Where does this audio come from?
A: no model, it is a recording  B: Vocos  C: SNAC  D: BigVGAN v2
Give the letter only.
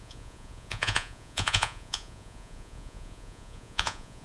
B